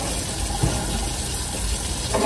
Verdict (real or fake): real